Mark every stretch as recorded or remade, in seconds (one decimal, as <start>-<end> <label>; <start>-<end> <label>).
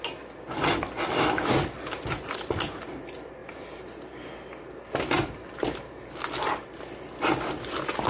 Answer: 0.0-8.1 recorded